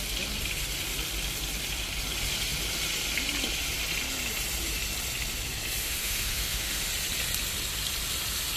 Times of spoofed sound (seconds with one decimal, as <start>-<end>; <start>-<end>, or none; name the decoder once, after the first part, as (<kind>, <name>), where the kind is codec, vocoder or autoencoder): 5.8-6.9 (autoencoder, DAC-VAE)